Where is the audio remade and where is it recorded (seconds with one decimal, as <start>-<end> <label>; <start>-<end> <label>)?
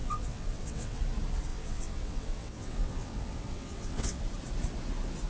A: 0.0-1.0 remade; 1.0-1.5 recorded; 1.5-4.2 remade; 4.2-5.3 recorded